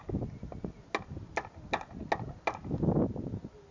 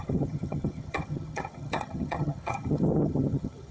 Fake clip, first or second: second